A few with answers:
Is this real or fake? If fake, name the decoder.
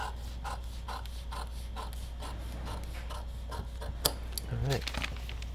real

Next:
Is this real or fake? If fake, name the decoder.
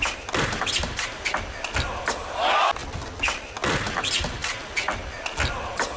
real